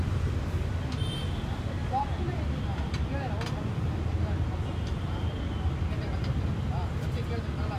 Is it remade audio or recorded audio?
recorded